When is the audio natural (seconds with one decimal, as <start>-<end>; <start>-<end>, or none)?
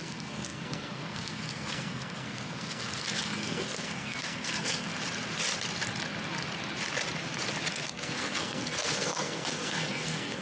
4.9-7.7